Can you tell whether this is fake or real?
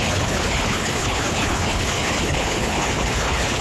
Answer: fake